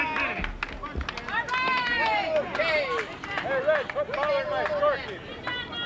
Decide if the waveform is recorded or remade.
recorded